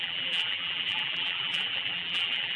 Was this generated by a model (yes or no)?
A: yes